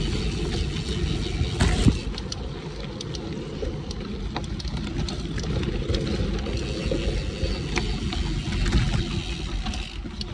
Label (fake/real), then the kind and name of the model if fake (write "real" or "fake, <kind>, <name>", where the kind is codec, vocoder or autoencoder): real